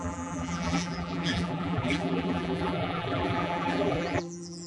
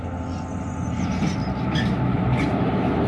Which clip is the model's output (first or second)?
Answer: first